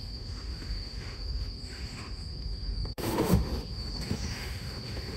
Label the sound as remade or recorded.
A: remade